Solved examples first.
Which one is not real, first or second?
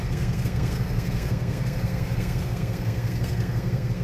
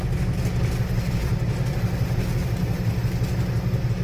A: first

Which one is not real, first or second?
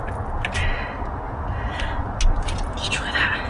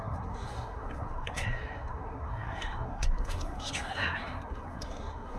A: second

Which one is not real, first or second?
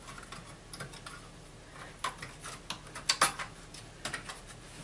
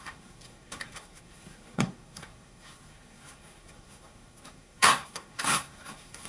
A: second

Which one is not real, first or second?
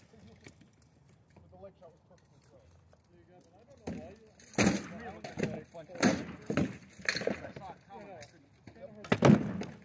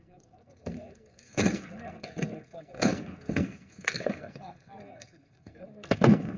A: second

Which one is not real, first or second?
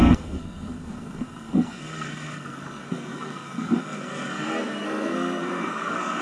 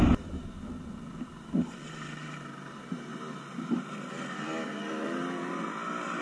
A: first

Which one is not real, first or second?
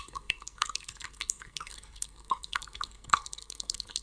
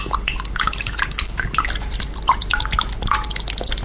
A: first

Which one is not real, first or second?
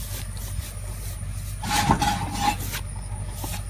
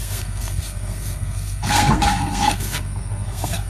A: second